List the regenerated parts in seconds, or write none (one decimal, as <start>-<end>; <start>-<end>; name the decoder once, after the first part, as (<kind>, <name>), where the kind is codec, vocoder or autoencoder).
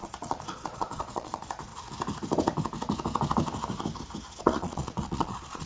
0.0-1.7 (vocoder, Vocos); 4.4-5.7